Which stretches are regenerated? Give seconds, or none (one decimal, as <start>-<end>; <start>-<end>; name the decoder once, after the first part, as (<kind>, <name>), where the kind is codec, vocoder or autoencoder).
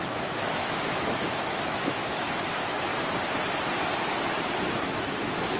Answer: 0.0-2.9 (autoencoder, DAC-VAE); 4.6-5.6